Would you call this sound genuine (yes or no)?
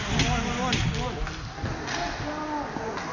yes